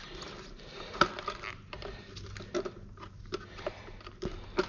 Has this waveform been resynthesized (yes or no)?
no